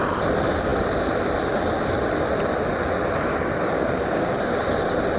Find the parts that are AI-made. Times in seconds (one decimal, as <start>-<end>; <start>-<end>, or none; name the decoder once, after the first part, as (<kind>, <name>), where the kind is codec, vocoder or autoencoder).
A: 3.5-4.3 (codec, DAC)